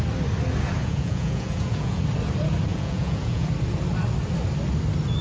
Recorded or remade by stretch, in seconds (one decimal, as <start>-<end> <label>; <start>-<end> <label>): 0.0-0.8 recorded; 0.8-2.0 remade; 2.0-2.7 recorded; 2.7-3.5 remade; 3.5-5.2 recorded